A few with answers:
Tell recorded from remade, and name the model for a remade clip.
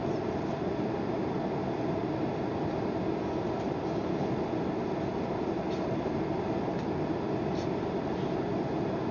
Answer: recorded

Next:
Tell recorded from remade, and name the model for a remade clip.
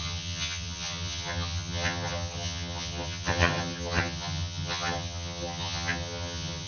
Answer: remade, vocoder, HiFi-GAN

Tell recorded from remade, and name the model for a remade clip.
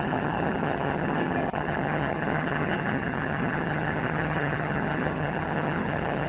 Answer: remade, vocoder, HiFi-GAN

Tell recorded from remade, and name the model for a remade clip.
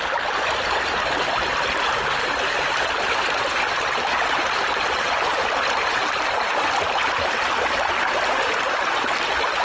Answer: recorded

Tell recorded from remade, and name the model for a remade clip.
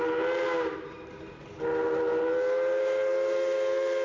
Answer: recorded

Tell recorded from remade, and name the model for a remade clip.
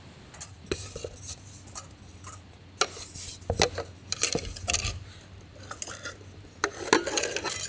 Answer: recorded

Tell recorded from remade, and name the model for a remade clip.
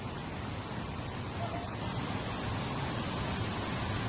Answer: recorded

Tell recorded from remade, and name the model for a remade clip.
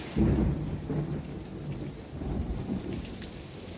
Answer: recorded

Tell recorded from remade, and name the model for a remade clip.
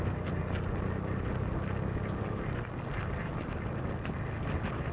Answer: recorded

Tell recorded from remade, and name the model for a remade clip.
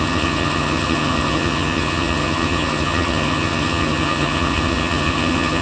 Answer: remade, vocoder, HiFi-GAN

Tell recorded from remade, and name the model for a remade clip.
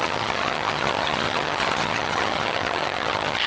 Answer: remade, vocoder, HiFi-GAN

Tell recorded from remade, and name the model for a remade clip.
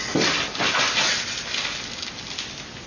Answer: recorded